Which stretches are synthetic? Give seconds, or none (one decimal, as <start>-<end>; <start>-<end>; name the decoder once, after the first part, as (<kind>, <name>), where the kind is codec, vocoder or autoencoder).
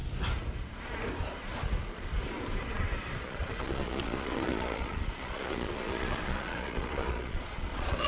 3.2-8.1 (vocoder, Vocos)